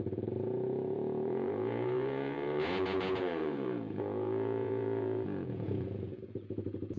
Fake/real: fake